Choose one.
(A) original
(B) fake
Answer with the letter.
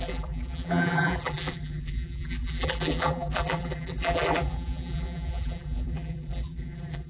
B